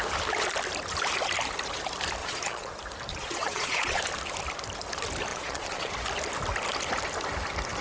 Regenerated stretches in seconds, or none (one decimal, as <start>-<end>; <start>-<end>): 2.2-2.7; 3.1-4.0; 5.3-5.9